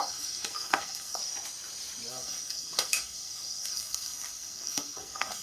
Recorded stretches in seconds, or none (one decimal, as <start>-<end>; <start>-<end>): 1.2-2.1